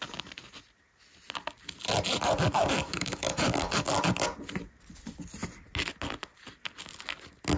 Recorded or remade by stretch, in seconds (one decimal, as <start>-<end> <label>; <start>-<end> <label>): 0.0-2.8 recorded; 2.8-3.9 remade; 3.9-7.6 recorded